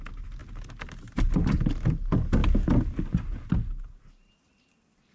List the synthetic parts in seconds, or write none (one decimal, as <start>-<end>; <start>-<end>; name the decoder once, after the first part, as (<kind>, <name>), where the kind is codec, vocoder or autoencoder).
none